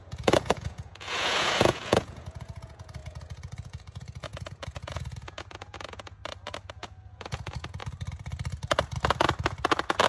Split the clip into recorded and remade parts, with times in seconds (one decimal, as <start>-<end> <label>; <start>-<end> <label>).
0.0-6.2 remade; 6.2-6.7 recorded; 6.7-7.8 remade; 7.8-10.1 recorded